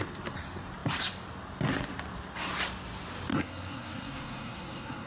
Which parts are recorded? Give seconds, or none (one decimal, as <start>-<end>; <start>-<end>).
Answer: 0.0-3.3